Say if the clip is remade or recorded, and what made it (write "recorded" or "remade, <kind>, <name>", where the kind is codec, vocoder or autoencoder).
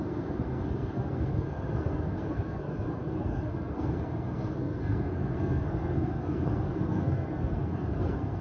remade, codec, SNAC